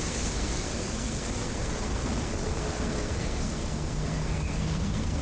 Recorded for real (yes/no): no